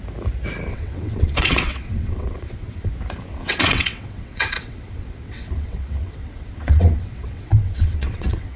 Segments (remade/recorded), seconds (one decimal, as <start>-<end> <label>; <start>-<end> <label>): 0.0-0.7 recorded; 0.7-2.9 remade; 2.9-3.3 recorded; 3.3-8.6 remade